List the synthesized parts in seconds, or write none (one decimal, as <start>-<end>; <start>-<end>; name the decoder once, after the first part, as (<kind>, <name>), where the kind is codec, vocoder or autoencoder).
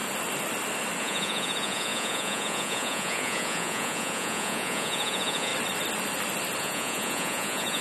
1.0-5.5 (vocoder, Vocos); 6.6-7.8